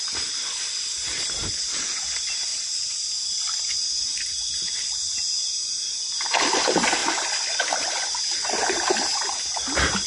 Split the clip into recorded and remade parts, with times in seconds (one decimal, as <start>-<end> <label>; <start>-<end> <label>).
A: 0.0-10.1 recorded